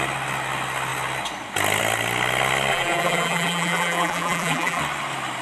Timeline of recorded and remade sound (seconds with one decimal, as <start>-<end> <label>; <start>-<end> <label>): 0.0-2.7 recorded; 2.7-4.8 remade; 4.8-5.4 recorded